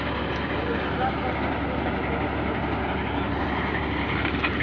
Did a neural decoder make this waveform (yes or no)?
no